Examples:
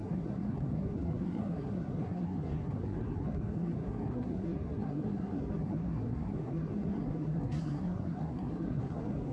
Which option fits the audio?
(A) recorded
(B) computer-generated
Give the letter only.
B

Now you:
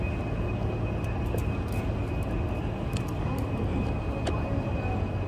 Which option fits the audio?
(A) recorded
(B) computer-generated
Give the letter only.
A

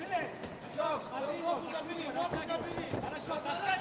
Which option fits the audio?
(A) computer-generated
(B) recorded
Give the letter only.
B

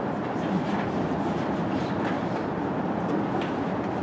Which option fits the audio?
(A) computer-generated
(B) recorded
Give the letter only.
A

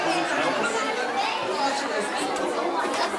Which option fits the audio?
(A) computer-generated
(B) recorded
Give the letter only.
B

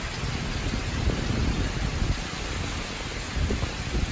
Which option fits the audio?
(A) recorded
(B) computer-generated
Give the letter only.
A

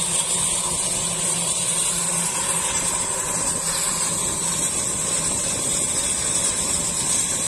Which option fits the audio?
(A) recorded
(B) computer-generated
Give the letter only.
A